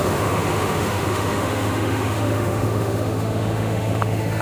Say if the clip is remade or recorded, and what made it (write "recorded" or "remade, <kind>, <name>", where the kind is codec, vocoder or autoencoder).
remade, autoencoder, DAC-VAE